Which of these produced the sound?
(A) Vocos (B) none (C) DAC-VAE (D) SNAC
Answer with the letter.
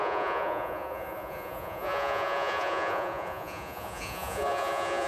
A